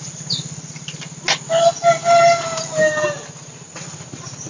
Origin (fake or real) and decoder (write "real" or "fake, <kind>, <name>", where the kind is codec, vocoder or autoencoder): real